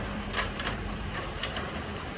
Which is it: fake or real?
fake